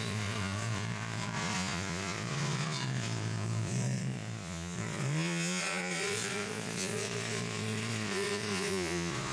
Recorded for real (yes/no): no